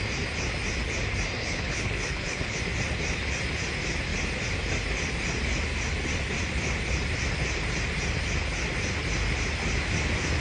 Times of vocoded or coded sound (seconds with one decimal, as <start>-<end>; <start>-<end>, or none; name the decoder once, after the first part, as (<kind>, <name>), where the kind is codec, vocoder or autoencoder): 1.4-2.6 (codec, HILCodec)